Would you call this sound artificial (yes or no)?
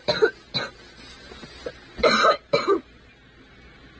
yes